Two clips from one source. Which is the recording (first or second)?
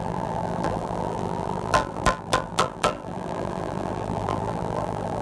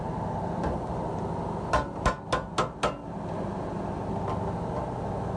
second